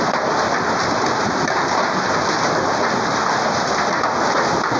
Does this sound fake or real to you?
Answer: real